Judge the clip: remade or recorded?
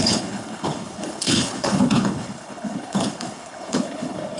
remade